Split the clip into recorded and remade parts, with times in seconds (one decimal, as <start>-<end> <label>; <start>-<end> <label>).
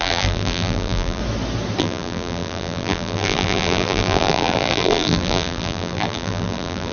0.0-1.2 remade; 1.2-1.8 recorded; 1.8-6.9 remade